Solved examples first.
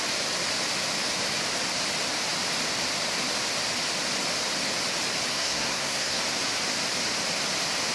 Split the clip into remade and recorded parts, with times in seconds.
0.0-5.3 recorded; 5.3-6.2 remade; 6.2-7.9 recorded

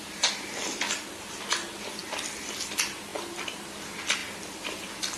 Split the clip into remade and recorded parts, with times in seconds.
0.0-5.2 recorded

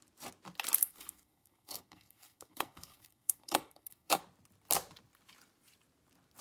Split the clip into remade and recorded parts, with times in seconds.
0.0-0.8 recorded; 0.8-4.2 remade; 4.2-6.4 recorded